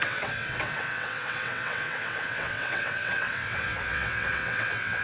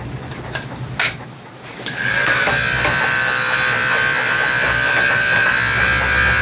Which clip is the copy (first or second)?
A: first